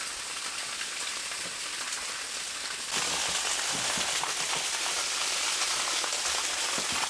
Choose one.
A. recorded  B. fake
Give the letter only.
A